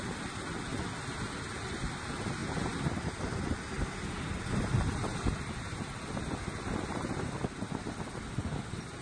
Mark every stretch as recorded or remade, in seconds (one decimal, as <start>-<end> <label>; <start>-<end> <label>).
0.0-9.0 recorded